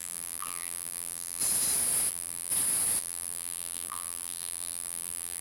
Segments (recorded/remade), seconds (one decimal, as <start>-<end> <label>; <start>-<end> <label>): 0.0-1.4 remade; 1.4-2.1 recorded; 2.1-2.5 remade; 2.5-3.0 recorded; 3.0-5.4 remade